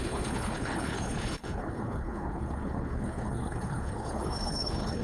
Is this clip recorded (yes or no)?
no